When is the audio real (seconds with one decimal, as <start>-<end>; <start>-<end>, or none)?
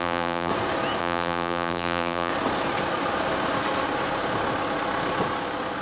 0.5-1.0; 2.3-5.8